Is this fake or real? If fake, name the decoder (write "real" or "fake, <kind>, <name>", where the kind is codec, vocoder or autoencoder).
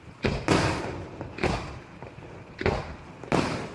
real